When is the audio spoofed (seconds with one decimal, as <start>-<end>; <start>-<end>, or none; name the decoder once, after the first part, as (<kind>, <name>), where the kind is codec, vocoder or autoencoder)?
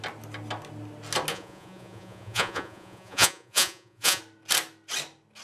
1.3-4.2 (vocoder, Vocos)